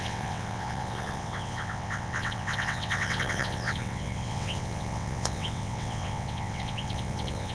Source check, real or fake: fake